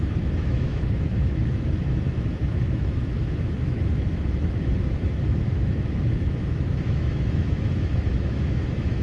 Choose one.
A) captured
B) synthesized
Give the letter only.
B